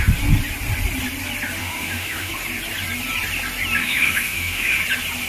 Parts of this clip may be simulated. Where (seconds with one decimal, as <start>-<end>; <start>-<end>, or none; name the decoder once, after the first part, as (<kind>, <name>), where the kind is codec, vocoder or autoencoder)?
1.6-2.3 (autoencoder, DAC-VAE); 3.8-4.8